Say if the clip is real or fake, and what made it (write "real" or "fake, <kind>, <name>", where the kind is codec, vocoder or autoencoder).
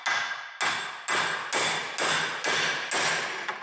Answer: real